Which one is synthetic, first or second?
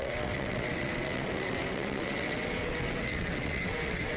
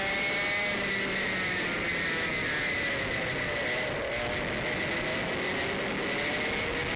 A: first